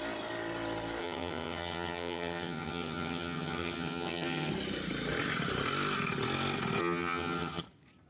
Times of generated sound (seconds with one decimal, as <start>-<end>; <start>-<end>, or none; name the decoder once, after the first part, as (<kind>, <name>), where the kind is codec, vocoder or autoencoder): 1.0-4.5 (vocoder, HiFi-GAN); 6.8-7.6